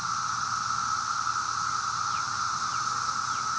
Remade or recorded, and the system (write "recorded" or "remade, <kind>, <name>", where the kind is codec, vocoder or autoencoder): recorded